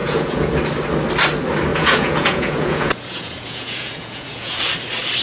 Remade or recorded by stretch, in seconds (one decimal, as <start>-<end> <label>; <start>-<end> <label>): 0.0-0.5 remade; 0.5-1.7 recorded; 1.7-4.6 remade; 4.6-5.2 recorded